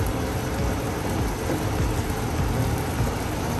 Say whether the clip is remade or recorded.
recorded